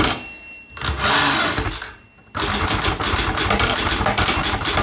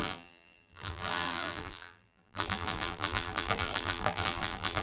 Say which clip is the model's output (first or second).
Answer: second